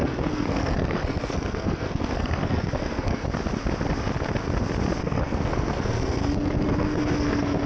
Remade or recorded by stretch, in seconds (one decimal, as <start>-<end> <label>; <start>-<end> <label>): 0.0-3.3 remade; 3.3-5.0 recorded; 5.0-7.7 remade